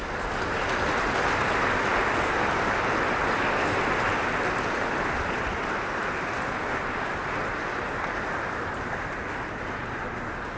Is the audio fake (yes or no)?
no